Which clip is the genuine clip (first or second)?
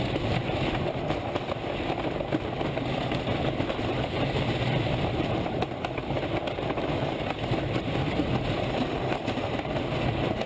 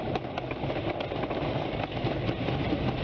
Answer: second